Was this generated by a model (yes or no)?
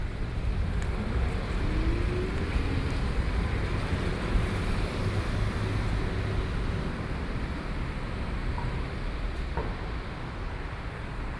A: no